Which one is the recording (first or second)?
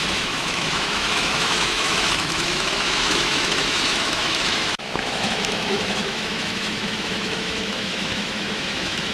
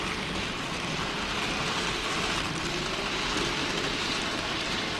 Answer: second